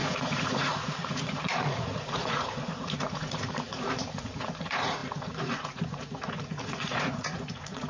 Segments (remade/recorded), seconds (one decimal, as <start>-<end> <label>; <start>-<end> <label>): 0.0-7.9 remade